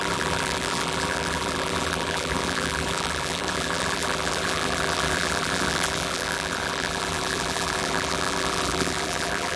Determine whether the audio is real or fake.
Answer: fake